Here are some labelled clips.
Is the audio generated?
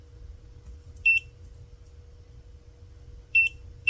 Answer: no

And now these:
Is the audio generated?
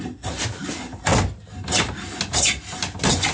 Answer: no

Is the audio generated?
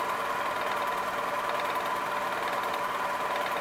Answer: no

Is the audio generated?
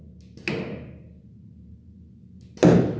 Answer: no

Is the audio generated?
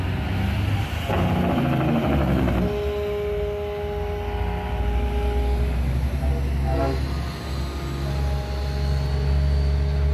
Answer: no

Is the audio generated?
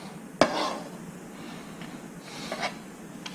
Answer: no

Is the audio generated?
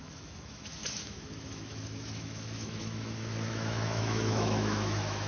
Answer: yes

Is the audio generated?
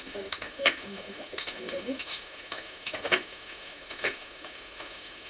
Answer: yes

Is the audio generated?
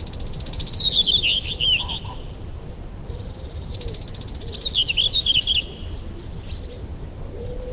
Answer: no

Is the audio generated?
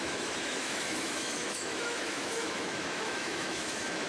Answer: yes